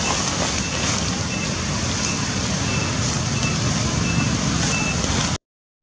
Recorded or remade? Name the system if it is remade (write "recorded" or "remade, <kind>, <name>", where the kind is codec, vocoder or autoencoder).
recorded